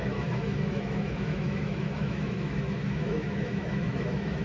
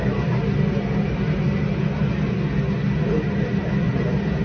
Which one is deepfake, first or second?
first